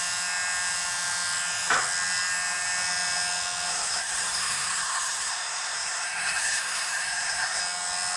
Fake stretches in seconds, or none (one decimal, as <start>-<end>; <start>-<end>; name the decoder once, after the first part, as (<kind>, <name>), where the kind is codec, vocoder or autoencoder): 3.7-7.6 (codec, SNAC)